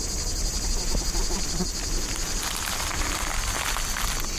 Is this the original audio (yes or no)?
yes